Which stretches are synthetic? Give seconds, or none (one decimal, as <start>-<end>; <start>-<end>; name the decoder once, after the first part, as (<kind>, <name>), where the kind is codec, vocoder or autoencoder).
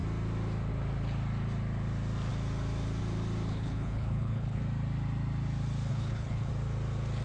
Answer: 3.5-4.6 (codec, HILCodec); 5.9-6.5